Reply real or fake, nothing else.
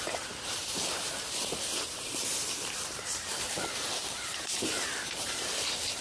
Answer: fake